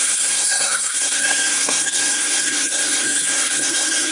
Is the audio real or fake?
fake